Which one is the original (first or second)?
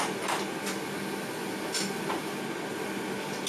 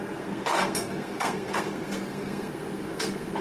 first